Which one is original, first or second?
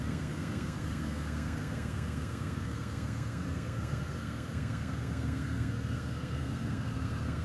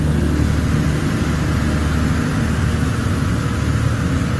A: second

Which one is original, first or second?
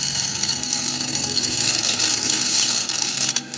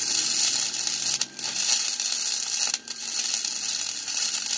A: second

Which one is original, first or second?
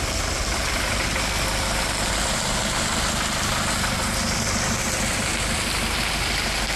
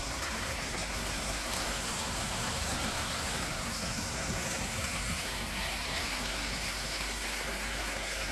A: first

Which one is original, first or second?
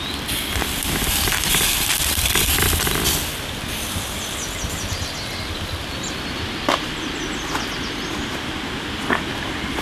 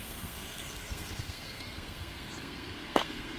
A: first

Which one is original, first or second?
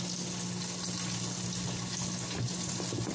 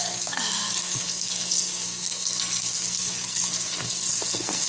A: first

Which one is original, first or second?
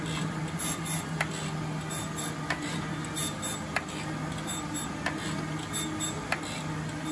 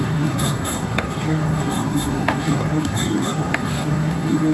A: first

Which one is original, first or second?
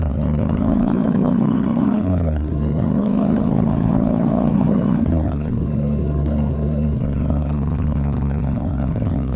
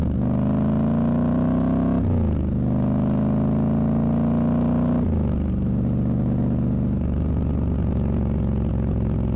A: second